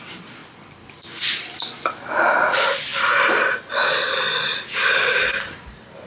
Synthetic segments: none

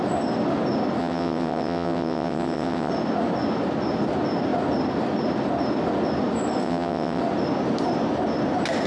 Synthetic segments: 1.0-2.9 (vocoder, WaveNeXt); 6.6-7.2

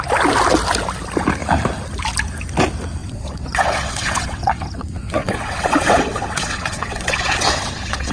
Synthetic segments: 3.0-8.1 (vocoder, WaveNeXt)

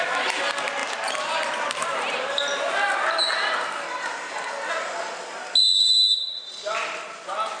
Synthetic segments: none

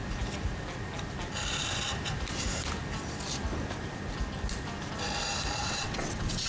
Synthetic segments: 5.6-6.5 (vocoder, WaveNeXt)

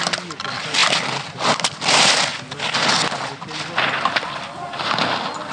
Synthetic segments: none

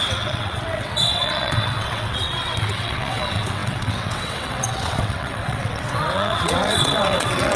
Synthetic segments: 0.0-7.6 (vocoder, WaveNeXt)

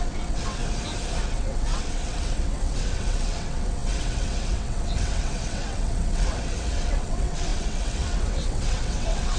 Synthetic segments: 0.0-0.6 (vocoder, WaveNeXt); 1.2-9.4